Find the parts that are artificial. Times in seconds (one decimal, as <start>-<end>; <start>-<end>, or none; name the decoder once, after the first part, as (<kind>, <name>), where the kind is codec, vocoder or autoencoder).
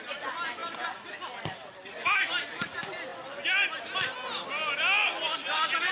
0.6-1.1 (vocoder, BigVGAN v2)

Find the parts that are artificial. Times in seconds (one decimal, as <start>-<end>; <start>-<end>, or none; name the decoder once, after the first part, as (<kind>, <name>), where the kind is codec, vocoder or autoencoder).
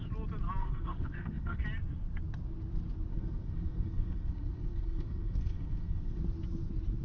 0.6-1.6 (codec, SNAC); 3.1-6.2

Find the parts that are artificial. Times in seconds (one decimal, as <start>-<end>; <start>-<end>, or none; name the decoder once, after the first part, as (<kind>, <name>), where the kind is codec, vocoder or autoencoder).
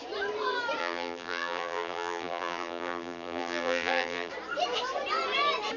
0.8-4.3 (vocoder, BigVGAN v2)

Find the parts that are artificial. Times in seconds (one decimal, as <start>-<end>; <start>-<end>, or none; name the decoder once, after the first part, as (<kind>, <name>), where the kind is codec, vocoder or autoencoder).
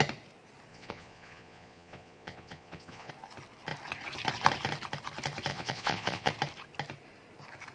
0.7-3.1 (vocoder, Vocos); 5.5-6.3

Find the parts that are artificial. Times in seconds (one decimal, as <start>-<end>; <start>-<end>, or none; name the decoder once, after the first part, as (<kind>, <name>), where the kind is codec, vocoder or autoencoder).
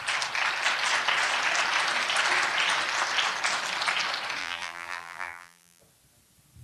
4.4-5.8 (vocoder, BigVGAN v2)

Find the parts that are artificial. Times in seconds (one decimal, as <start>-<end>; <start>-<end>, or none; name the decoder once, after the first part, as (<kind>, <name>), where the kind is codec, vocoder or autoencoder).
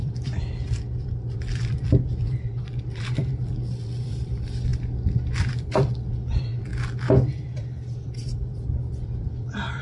0.0-4.7 (vocoder, BigVGAN v2); 5.5-6.7; 7.3-9.8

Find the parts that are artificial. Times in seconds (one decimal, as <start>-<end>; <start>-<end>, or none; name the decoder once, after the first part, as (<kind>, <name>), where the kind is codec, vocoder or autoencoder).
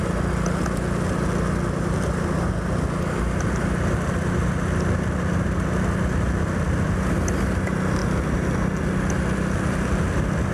none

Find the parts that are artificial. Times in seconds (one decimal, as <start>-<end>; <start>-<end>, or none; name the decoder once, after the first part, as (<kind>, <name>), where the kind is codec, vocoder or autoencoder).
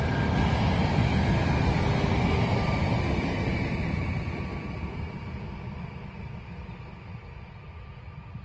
none